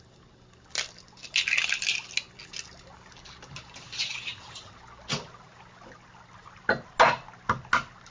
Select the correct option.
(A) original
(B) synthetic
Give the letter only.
A